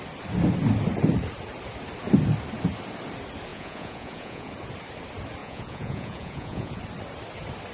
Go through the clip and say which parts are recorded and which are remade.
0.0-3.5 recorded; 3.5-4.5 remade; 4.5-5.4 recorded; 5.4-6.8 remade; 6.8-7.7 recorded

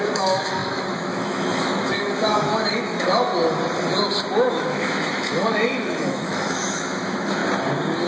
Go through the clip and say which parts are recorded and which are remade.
0.0-3.3 remade; 3.3-4.5 recorded; 4.5-7.4 remade; 7.4-8.1 recorded

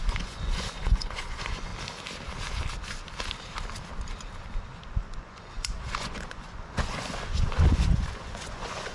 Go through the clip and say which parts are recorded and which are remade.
0.0-1.7 remade; 1.7-5.0 recorded; 5.0-8.9 remade

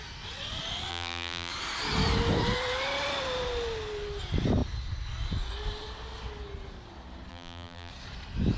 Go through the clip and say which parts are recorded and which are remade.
0.0-0.9 recorded; 0.9-1.5 remade; 1.5-7.3 recorded; 7.3-7.9 remade; 7.9-8.6 recorded

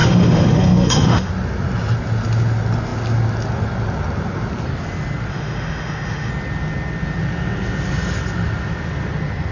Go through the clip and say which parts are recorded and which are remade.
0.0-1.3 remade; 1.3-5.3 recorded; 5.3-6.3 remade; 6.3-9.5 recorded